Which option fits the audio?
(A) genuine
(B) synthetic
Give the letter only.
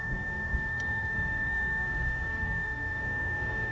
B